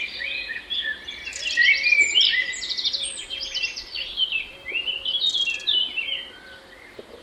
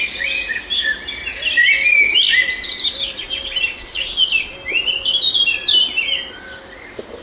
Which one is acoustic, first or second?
second